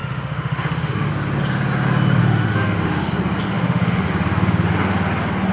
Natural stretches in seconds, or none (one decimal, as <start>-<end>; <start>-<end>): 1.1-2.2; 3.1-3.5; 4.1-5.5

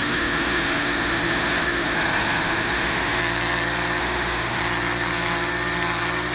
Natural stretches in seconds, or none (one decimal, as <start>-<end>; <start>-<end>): 3.2-4.0; 4.6-6.3

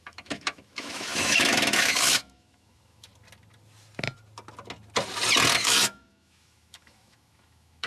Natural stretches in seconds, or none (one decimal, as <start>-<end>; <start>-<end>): 3.1-5.6